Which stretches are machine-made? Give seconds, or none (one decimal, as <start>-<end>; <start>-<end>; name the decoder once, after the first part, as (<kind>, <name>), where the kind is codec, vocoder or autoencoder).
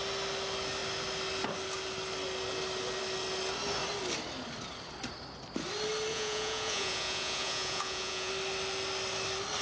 6.1-8.3 (vocoder, Vocos)